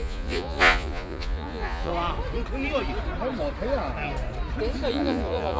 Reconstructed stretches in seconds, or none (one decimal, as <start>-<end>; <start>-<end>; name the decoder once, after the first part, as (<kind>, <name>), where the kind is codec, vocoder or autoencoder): 0.0-1.9 (vocoder, Vocos); 4.9-5.6